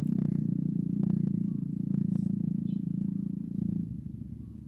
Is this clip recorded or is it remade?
recorded